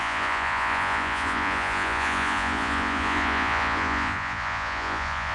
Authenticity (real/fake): fake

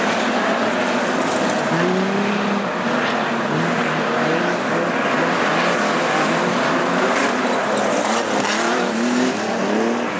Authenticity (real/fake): real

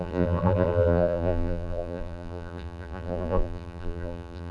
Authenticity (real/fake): fake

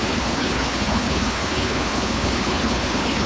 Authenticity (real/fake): fake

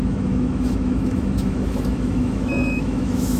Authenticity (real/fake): fake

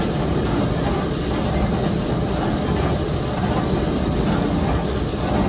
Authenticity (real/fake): real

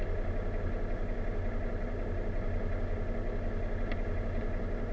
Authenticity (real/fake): real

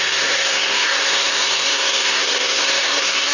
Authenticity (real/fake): fake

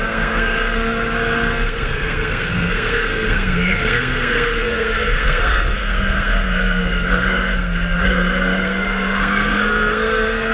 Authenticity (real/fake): fake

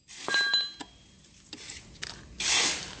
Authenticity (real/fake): real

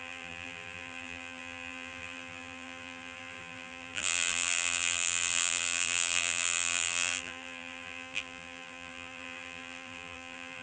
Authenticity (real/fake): fake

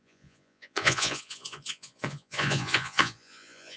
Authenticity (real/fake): fake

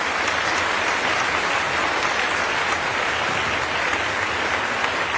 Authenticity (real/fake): real